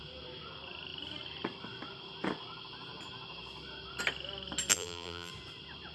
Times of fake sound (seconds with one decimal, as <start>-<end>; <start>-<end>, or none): 4.7-5.3